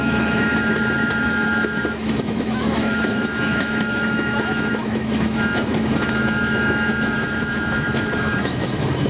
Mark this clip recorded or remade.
remade